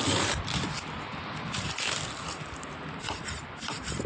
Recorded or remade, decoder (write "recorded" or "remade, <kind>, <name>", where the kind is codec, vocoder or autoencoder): remade, vocoder, BigVGAN v2